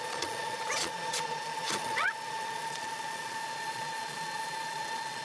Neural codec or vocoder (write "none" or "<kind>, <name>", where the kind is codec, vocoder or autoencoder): vocoder, Vocos